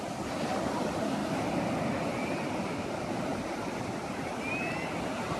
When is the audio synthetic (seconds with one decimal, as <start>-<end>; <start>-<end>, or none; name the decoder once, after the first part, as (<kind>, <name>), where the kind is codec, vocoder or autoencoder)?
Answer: none